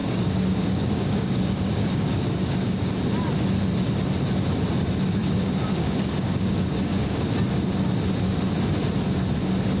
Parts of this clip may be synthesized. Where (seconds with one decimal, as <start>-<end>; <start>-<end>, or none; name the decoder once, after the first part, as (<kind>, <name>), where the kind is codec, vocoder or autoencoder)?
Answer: 0.0-2.9 (codec, DAC); 5.2-7.2